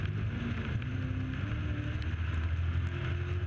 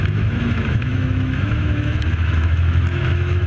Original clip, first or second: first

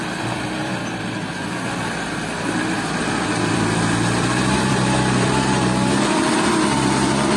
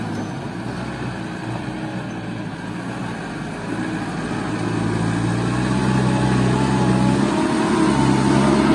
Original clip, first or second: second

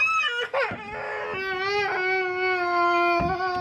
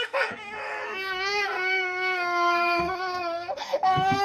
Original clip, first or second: first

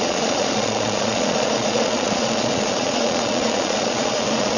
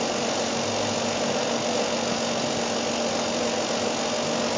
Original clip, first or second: second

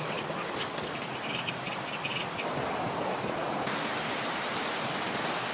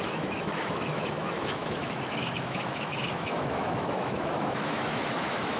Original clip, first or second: first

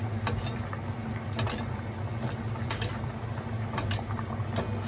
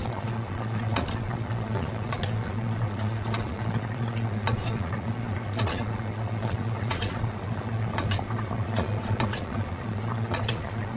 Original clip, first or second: first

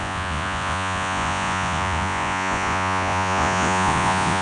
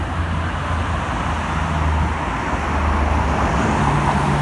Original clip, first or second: second